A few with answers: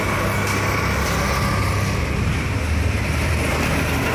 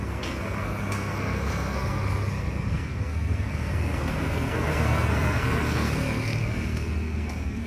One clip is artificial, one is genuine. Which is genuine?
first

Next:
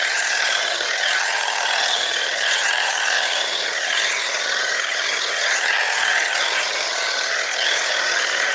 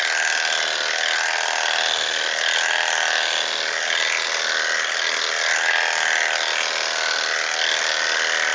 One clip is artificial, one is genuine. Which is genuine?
second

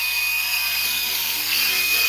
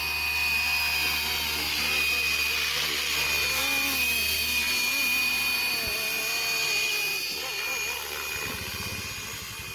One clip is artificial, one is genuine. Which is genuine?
second